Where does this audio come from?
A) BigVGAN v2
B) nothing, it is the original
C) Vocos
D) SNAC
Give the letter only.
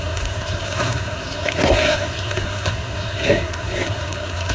D